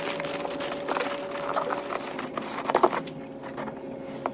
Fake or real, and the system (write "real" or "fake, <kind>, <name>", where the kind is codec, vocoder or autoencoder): real